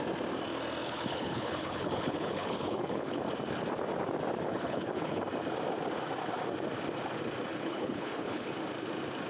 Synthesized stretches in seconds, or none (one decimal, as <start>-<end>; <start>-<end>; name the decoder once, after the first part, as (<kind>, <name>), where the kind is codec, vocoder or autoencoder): 0.8-3.2 (codec, HILCodec); 4.5-5.2; 7.5-8.5